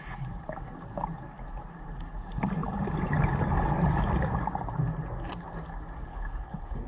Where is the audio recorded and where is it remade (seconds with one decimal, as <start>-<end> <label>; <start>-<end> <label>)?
0.0-6.1 recorded; 6.1-6.9 remade